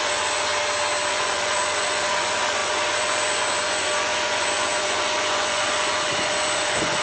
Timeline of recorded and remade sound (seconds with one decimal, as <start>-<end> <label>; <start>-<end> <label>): 0.0-0.5 remade; 0.5-1.1 recorded; 1.1-7.0 remade